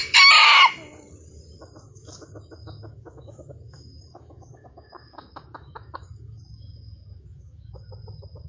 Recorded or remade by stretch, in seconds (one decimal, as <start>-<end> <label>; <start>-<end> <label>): 0.0-1.6 recorded; 1.6-8.5 remade